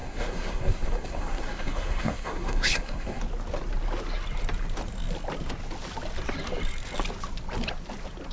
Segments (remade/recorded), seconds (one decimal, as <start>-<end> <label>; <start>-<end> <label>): 0.0-3.2 remade; 3.2-8.3 recorded